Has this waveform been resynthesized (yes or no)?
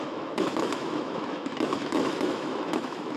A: yes